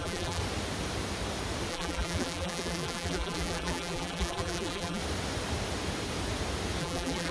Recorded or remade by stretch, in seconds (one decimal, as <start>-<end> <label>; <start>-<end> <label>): 0.0-0.4 remade; 0.4-1.7 recorded; 1.7-5.0 remade; 5.0-6.8 recorded; 6.8-7.3 remade